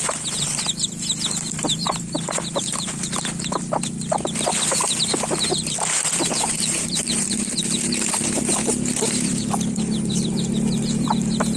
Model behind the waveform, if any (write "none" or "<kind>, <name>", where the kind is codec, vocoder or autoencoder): vocoder, BigVGAN v2